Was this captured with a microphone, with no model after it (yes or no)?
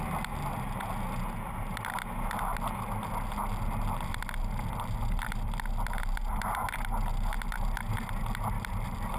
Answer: yes